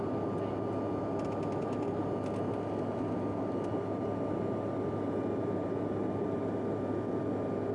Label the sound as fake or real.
real